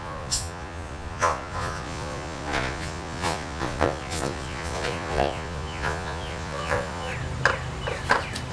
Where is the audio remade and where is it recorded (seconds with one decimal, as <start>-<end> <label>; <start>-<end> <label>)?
0.0-7.1 remade; 7.1-8.5 recorded